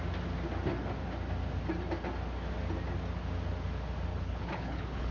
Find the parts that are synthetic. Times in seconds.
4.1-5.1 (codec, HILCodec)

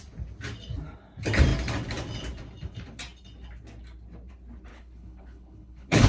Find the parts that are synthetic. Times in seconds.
4.7-6.1 (codec, HILCodec)

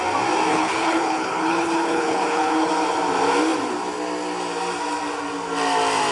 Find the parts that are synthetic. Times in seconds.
0.5-2.7 (codec, HILCodec)